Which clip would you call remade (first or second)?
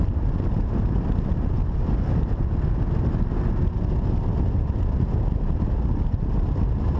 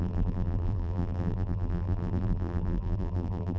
second